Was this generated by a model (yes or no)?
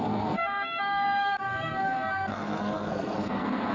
yes